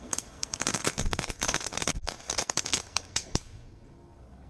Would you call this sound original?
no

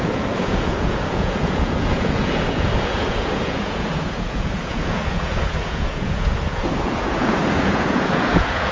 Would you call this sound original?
no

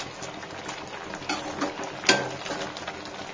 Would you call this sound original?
yes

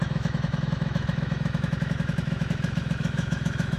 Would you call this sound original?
no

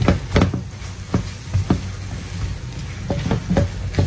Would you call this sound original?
yes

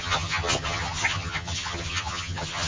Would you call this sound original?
no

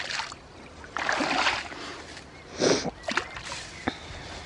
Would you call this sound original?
yes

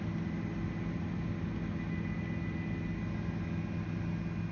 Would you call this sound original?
yes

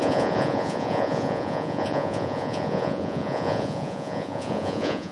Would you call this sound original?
no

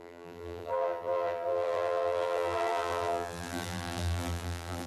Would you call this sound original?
no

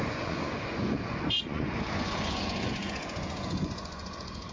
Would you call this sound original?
no